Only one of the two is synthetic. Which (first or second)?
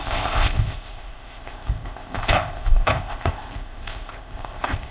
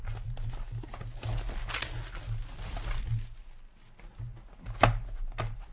first